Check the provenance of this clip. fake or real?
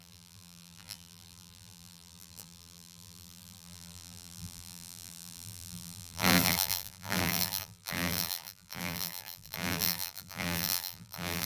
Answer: fake